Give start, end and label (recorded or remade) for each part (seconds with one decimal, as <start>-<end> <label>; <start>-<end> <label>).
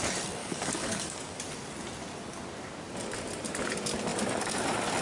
0.0-0.4 recorded; 0.4-1.4 remade; 1.4-5.0 recorded